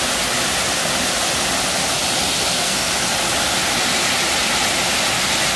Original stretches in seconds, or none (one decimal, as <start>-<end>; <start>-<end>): 0.0-2.4; 2.9-5.6

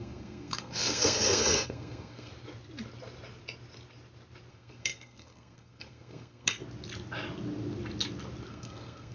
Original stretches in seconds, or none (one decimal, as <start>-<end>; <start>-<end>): 2.3-4.5; 6.6-8.5

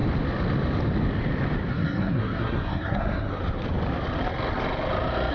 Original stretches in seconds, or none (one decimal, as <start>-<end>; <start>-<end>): 0.0-1.7; 3.4-5.3

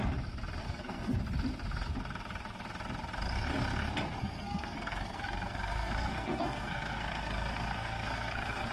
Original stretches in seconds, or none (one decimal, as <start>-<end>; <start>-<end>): 0.0-0.6; 1.2-4.2

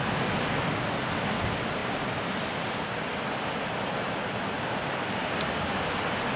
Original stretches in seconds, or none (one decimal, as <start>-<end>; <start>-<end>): 0.0-6.4